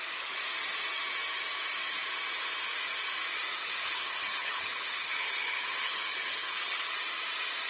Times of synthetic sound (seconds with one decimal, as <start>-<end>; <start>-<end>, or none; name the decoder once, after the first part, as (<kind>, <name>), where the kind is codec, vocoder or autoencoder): 3.6-6.9 (codec, HILCodec)